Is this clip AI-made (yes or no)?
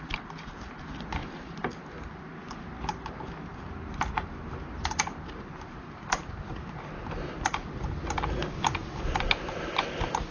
no